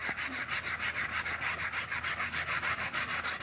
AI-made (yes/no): no